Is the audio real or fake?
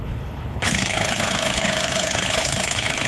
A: fake